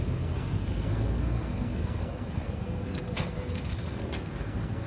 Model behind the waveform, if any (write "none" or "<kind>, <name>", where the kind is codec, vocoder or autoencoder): codec, SNAC